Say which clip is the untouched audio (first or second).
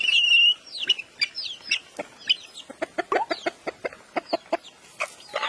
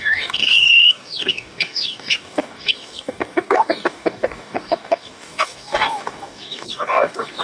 first